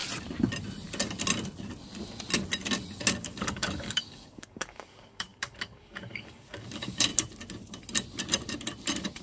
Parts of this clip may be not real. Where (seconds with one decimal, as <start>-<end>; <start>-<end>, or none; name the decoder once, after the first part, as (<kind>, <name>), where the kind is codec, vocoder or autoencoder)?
3.2-7.1 (codec, DAC)

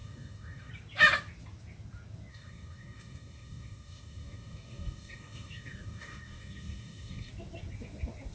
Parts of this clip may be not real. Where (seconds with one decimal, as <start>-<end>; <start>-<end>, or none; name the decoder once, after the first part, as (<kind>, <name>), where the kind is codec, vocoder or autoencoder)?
0.0-0.7 (codec, DAC); 2.3-7.3

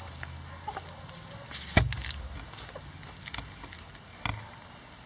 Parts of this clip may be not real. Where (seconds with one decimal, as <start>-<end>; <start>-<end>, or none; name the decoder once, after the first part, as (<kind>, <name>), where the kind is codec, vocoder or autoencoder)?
none

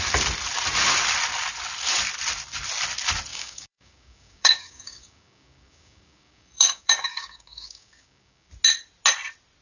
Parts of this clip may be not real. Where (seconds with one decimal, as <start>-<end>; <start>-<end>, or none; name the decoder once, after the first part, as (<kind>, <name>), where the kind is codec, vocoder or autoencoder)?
3.3-8.5 (codec, DAC)

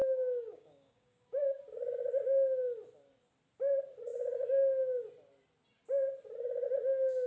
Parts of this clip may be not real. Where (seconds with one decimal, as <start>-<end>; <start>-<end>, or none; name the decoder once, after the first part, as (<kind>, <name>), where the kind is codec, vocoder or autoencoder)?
0.0-1.6 (codec, DAC)

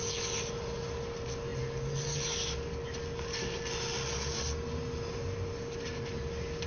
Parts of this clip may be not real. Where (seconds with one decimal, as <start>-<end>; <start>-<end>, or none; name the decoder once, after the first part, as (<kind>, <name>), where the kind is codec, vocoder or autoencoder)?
none

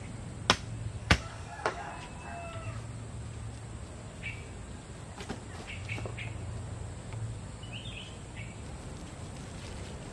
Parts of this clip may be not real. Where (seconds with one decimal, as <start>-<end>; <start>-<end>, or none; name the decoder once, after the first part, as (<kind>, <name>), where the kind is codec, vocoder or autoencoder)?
1.0-1.9 (codec, DAC)

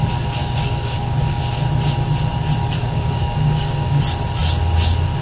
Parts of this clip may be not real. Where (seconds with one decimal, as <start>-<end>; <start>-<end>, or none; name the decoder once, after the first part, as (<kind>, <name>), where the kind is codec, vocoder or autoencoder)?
0.4-1.4 (codec, DAC); 2.8-4.0